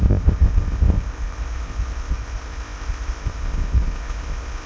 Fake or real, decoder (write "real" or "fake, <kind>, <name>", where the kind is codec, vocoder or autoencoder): fake, codec, ZipCodec